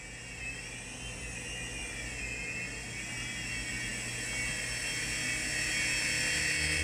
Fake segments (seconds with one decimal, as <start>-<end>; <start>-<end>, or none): none